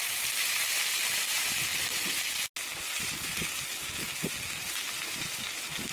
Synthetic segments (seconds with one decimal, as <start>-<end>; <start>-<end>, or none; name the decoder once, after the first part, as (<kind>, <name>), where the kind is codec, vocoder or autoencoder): 0.0-1.7 (vocoder, BigVGAN v2); 2.9-3.7; 4.3-5.9